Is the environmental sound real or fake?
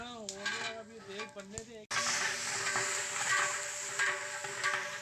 real